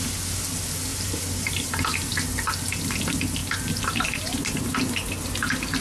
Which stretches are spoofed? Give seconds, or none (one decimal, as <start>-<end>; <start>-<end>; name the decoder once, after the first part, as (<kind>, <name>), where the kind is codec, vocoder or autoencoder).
0.9-2.1 (vocoder, BigVGAN v2); 3.4-4.6